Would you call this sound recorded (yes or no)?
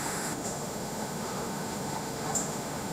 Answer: no